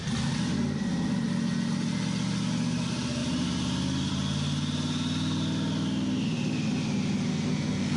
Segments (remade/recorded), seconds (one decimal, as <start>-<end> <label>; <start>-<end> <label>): 0.0-7.3 recorded; 7.3-8.0 remade